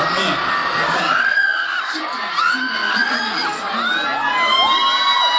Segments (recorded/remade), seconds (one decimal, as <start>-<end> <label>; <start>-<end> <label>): 0.0-0.6 recorded; 0.6-2.3 remade; 2.3-2.8 recorded; 2.8-3.6 remade; 3.6-5.4 recorded